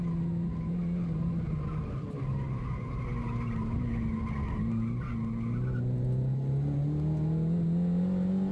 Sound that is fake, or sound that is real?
real